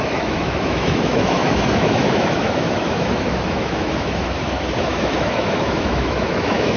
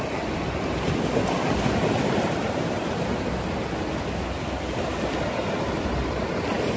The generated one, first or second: first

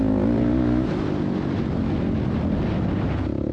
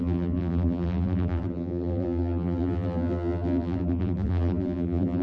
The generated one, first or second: second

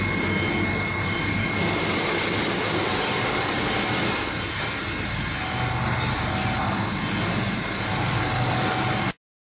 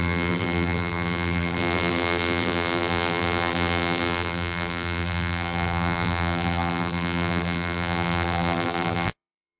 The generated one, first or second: second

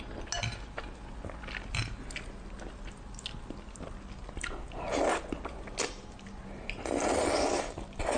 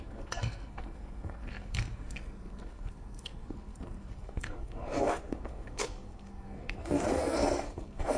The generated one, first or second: second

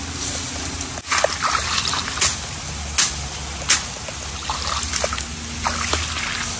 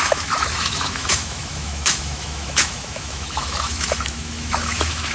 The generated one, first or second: second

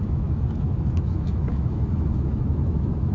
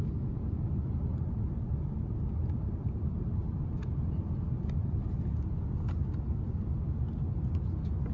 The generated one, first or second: first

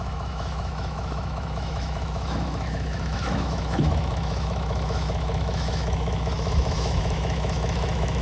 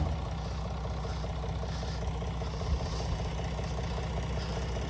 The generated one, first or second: first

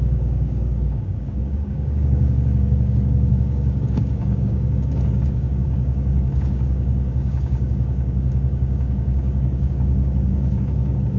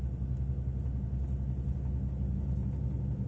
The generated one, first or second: first